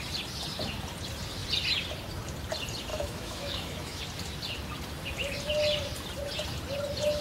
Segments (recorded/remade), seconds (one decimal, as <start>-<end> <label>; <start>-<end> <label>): 0.0-2.9 recorded; 2.9-4.0 remade; 4.0-7.2 recorded